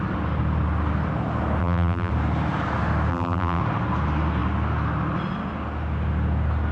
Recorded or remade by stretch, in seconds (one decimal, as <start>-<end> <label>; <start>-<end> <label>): 0.0-1.6 recorded; 1.6-2.1 remade; 2.1-3.1 recorded; 3.1-3.6 remade; 3.6-6.7 recorded